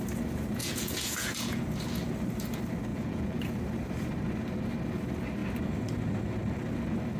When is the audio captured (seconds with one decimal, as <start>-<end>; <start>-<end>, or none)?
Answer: 0.0-0.6; 1.6-2.9; 3.6-7.2